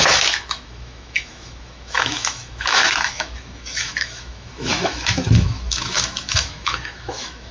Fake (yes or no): yes